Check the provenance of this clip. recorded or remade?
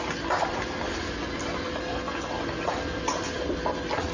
recorded